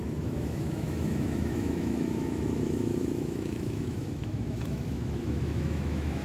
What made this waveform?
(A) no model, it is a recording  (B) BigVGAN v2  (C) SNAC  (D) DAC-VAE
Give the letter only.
D